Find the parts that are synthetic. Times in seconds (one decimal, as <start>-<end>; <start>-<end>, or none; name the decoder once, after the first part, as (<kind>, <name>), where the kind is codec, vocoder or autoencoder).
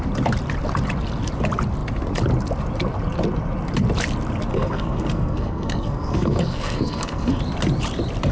4.5-7.4 (codec, SNAC)